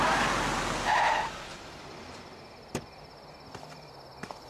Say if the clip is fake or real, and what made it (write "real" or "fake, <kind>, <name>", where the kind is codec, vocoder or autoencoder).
real